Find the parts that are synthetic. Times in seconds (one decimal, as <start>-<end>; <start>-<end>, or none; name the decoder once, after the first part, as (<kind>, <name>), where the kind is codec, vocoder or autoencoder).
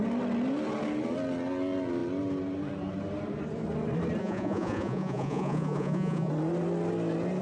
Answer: 4.2-6.3 (vocoder, Vocos)